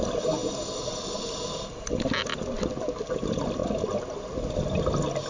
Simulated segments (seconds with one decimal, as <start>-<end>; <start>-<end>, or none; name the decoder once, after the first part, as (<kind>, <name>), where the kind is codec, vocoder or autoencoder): none